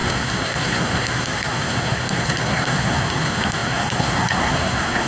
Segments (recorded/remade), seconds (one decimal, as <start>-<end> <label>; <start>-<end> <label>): 0.0-5.1 remade